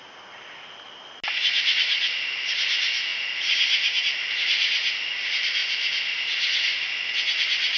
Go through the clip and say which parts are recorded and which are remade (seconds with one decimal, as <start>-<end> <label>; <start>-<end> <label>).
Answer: 0.0-7.8 recorded